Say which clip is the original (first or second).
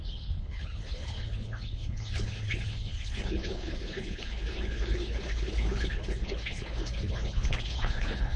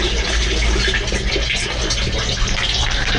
second